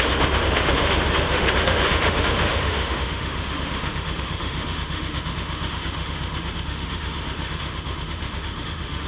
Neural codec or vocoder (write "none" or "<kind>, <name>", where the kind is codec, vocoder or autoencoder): autoencoder, DAC-VAE